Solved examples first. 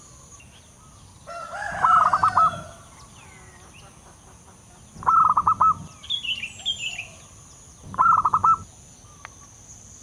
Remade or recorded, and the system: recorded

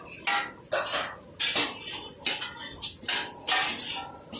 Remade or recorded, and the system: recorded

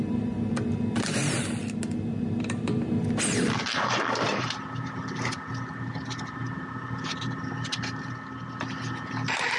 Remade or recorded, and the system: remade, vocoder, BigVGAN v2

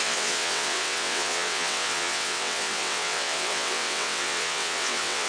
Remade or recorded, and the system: remade, vocoder, WaveNeXt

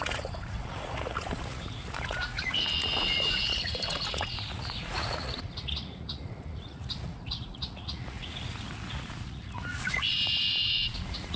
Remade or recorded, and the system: remade, vocoder, Vocos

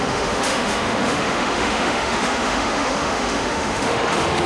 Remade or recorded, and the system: remade, autoencoder, DAC-VAE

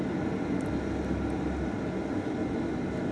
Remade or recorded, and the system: recorded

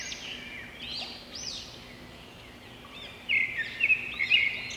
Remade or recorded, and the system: recorded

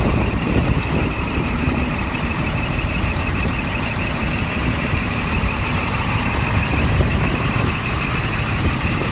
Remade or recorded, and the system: remade, vocoder, BigVGAN v2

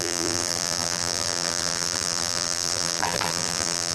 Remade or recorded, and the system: remade, vocoder, BigVGAN v2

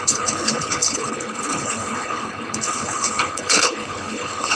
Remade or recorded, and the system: remade, codec, HILCodec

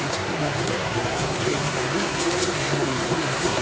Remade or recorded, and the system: remade, codec, SNAC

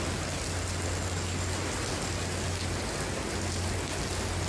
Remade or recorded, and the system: recorded